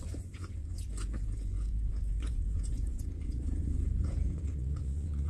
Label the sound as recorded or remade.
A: remade